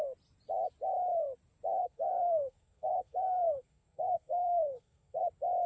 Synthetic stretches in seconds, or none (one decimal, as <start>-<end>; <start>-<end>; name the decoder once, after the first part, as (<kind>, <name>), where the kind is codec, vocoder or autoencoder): 1.8-5.2 (codec, SNAC)